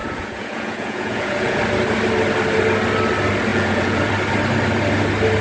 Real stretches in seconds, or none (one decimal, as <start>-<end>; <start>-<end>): 1.6-3.5; 4.1-5.4